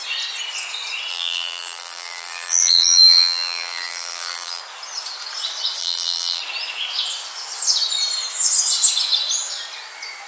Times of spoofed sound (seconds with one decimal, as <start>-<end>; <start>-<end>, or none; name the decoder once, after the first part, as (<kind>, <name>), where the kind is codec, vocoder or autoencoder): 1.1-4.6 (vocoder, BigVGAN v2); 5.8-6.4